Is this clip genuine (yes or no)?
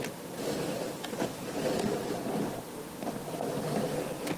no